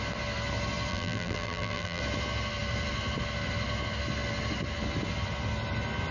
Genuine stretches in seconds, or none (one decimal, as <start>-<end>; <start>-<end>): 0.0-0.9; 2.0-6.1